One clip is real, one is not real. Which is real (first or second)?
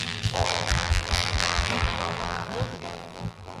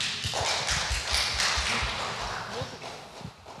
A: second